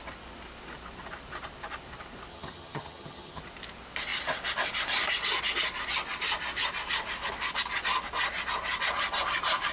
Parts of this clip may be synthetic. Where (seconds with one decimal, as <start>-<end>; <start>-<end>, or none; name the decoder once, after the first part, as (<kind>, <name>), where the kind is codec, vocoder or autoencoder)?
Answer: 2.3-3.4 (vocoder, HiFi-GAN)

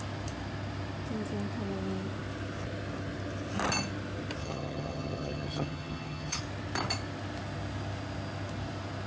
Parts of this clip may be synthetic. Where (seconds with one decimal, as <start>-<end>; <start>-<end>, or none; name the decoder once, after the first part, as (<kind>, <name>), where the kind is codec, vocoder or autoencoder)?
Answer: 4.4-6.4 (vocoder, HiFi-GAN)

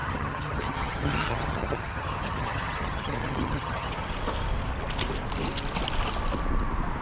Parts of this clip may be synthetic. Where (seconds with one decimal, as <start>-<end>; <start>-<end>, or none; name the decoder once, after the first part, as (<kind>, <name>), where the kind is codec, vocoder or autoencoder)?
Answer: 0.0-4.1 (vocoder, HiFi-GAN)

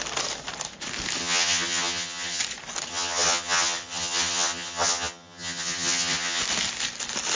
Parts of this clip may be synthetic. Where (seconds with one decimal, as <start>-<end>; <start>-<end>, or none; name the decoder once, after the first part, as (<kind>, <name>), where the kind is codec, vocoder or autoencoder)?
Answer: 1.2-2.4 (vocoder, HiFi-GAN); 2.9-6.4

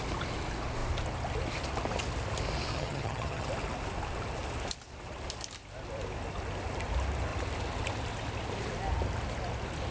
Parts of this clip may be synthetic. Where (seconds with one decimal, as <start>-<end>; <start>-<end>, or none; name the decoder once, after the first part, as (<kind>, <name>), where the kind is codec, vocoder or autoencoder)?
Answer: 2.7-3.5 (vocoder, HiFi-GAN)